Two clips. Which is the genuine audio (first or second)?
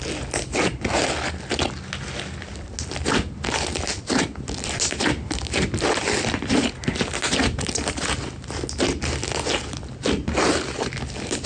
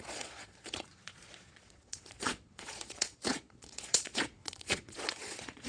first